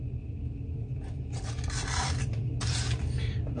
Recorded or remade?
recorded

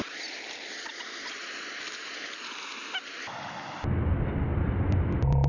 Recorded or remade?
recorded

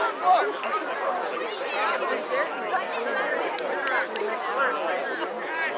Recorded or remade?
recorded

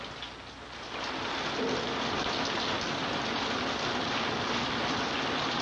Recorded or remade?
recorded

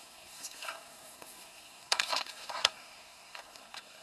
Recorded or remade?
remade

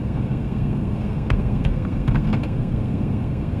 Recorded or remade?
remade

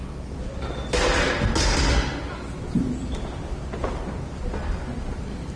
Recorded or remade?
recorded